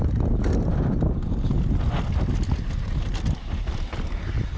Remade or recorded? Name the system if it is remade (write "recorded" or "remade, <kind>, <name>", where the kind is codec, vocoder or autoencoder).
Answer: recorded